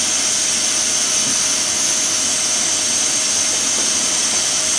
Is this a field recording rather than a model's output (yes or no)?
yes